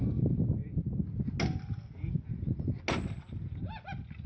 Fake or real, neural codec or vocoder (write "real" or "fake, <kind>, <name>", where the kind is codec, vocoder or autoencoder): real